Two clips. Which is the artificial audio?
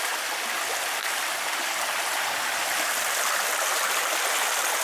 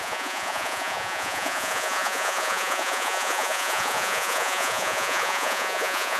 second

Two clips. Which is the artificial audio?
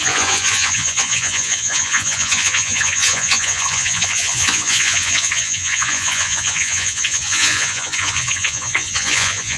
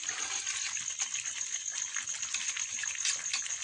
first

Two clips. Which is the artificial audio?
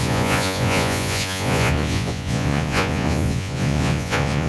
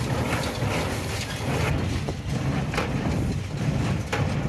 first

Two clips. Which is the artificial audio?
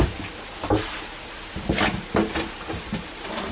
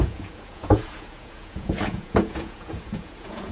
second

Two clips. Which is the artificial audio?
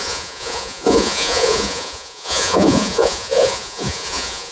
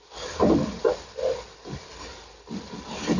first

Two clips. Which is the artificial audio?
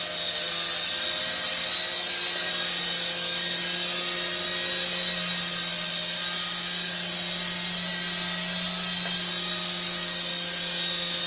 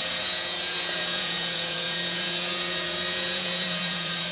second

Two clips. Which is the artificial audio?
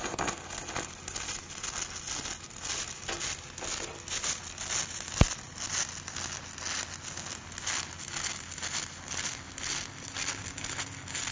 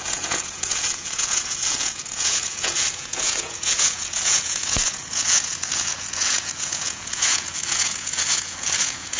second